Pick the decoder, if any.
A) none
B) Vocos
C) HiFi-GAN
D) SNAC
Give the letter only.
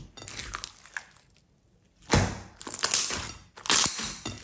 A